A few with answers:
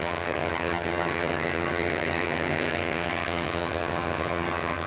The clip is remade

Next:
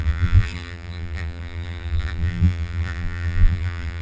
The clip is remade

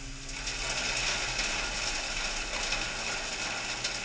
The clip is recorded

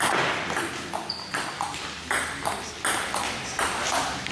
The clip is remade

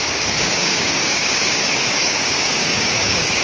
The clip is remade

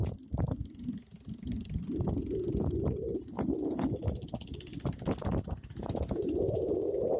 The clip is recorded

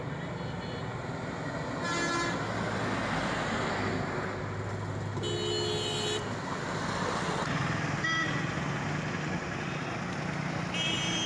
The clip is recorded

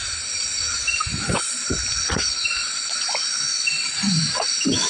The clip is recorded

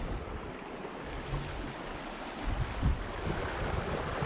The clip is recorded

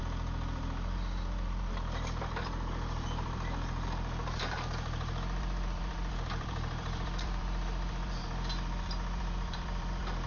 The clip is remade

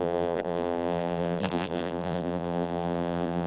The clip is remade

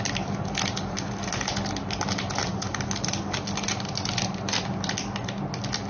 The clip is recorded